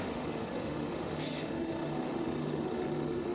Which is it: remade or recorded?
remade